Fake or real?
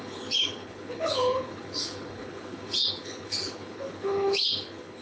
fake